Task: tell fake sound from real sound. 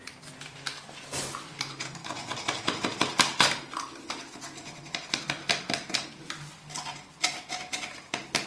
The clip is real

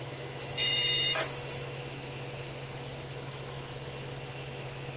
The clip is fake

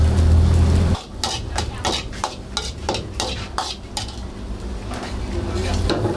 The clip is real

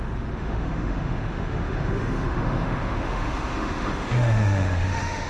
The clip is fake